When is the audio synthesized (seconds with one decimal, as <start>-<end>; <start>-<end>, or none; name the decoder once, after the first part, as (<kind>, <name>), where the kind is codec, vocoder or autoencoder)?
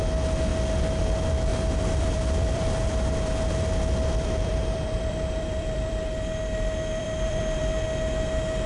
1.5-6.4 (vocoder, BigVGAN v2); 6.9-7.7